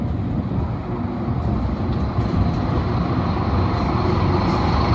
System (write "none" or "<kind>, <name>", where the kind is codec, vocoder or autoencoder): none